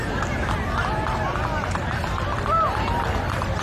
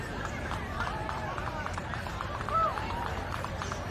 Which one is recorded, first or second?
first